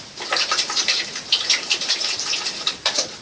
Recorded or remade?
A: remade